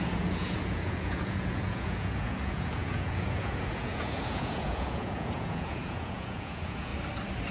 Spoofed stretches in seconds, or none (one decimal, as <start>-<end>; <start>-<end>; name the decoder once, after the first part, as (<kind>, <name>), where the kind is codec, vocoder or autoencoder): 0.0-6.9 (vocoder, Vocos)